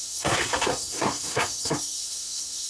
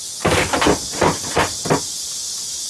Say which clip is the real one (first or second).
second